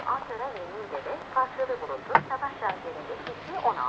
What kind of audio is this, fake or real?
real